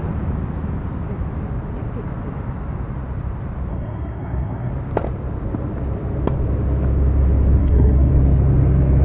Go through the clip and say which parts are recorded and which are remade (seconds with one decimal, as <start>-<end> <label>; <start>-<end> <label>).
0.0-3.7 recorded; 3.7-4.7 remade; 4.7-7.6 recorded; 7.6-8.1 remade; 8.1-9.0 recorded

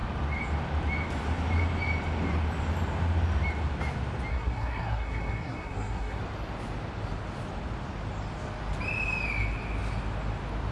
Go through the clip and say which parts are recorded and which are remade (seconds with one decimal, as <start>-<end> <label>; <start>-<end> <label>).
0.0-4.3 recorded; 4.3-6.2 remade; 6.2-10.7 recorded

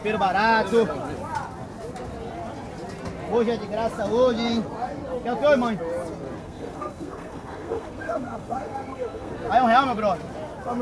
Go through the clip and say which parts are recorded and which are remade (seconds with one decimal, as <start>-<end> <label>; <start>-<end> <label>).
0.0-6.4 recorded; 6.4-9.3 remade; 9.3-10.8 recorded

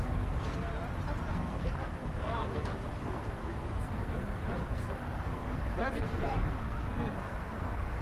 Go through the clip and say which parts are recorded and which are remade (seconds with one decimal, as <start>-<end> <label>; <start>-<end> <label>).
0.0-0.7 remade; 0.7-1.3 recorded; 1.3-8.0 remade

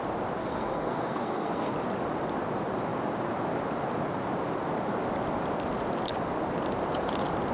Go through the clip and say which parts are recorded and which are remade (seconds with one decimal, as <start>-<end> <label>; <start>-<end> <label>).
0.0-0.4 recorded; 0.4-1.7 remade; 1.7-7.5 recorded

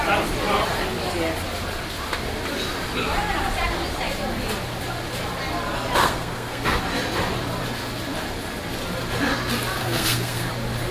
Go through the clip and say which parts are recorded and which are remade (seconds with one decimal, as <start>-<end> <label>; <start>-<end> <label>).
0.0-6.0 recorded; 6.0-6.8 remade; 6.8-9.8 recorded; 9.8-10.5 remade; 10.5-10.9 recorded

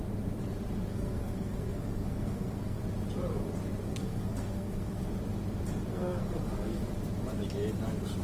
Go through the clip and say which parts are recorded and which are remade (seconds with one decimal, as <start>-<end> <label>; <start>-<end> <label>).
0.0-0.9 recorded; 0.9-2.8 remade; 2.8-3.9 recorded; 3.9-5.0 remade; 5.0-5.9 recorded; 5.9-6.8 remade; 6.8-8.2 recorded

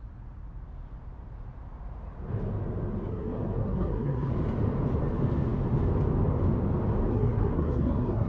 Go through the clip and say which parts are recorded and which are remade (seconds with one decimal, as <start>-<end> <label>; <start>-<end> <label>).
0.0-3.1 recorded; 3.1-4.3 remade; 4.3-7.1 recorded; 7.1-8.3 remade